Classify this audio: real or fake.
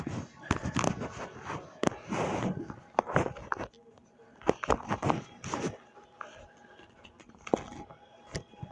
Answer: real